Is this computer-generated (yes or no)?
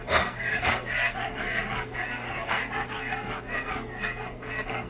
yes